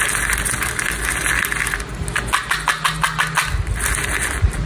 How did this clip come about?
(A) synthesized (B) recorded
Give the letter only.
B